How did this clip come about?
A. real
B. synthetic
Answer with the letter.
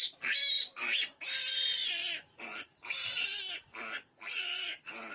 A